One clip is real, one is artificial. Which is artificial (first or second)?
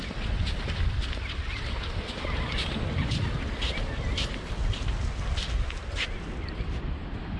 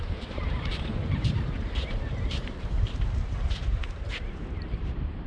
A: second